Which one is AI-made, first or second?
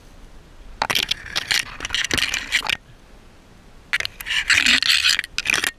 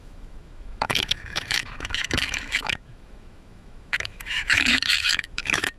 second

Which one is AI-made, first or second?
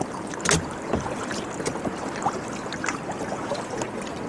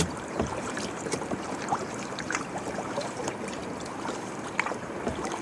second